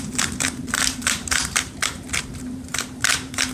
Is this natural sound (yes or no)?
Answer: no